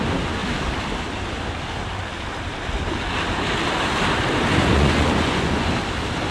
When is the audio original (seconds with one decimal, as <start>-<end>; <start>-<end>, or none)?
0.0-4.7; 5.7-6.3